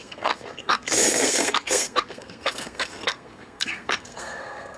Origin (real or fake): fake